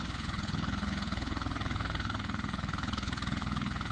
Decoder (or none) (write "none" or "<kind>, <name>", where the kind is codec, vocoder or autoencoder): codec, HILCodec